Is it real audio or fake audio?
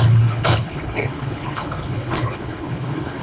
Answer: fake